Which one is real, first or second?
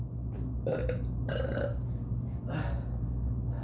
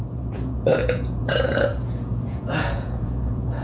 first